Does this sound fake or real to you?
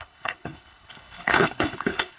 fake